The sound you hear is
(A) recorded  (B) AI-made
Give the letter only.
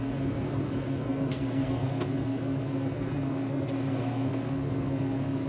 B